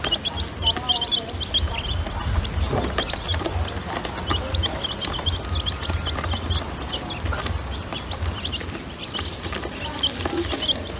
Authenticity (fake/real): real